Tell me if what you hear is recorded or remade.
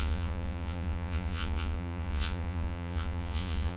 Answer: remade